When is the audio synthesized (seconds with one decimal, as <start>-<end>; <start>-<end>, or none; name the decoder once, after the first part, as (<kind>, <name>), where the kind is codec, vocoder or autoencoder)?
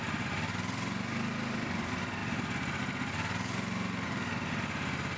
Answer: none